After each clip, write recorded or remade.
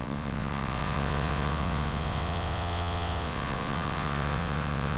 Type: remade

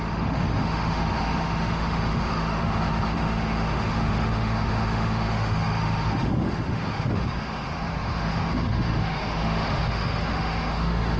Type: remade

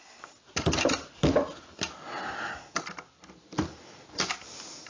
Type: recorded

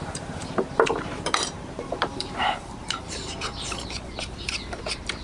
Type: remade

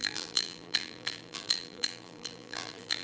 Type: remade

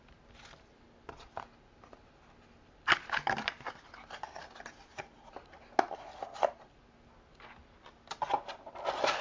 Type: recorded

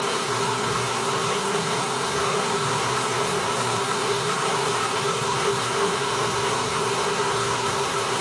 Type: remade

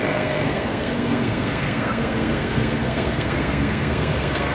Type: remade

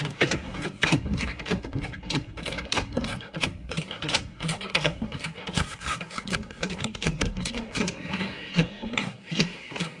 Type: remade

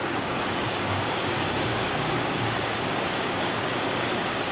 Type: remade